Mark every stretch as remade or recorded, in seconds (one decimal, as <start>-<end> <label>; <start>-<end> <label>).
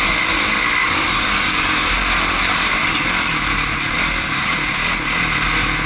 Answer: 0.0-0.8 recorded; 0.8-1.9 remade; 1.9-5.9 recorded